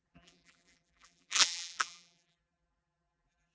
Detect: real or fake fake